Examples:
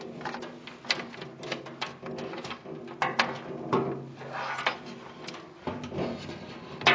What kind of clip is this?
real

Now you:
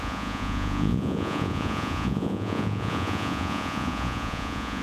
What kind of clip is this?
fake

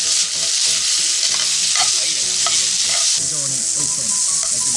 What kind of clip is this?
real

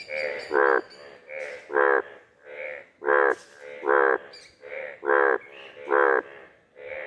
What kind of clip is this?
real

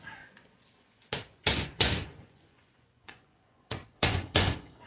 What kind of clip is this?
fake